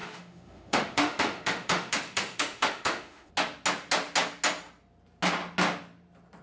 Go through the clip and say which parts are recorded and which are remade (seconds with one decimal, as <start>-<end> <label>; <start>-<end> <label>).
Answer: 0.0-3.3 remade; 3.3-6.4 recorded